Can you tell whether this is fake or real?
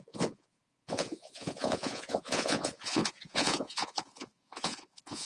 fake